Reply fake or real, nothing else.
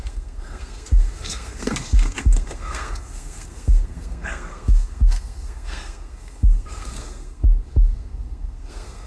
fake